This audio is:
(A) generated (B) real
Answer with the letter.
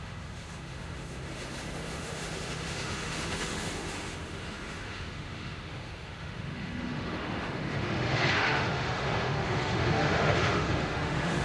A